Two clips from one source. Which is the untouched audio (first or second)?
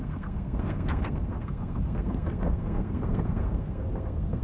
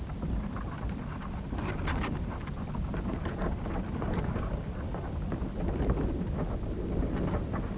second